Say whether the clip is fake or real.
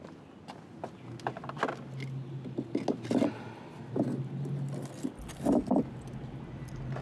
real